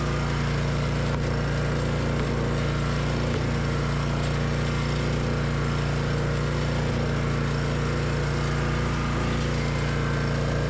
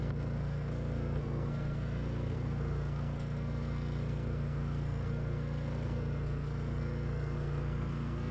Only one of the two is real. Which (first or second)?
first